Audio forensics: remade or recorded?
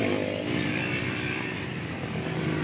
remade